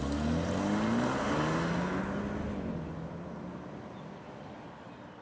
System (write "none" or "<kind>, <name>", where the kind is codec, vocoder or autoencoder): none